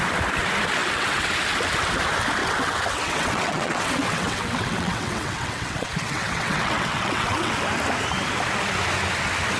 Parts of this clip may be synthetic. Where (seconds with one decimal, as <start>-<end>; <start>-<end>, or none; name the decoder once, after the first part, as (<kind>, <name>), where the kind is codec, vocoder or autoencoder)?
0.8-1.3 (vocoder, WaveNeXt); 2.4-7.5